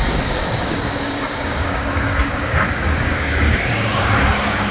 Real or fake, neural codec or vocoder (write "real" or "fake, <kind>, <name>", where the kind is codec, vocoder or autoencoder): fake, codec, DAC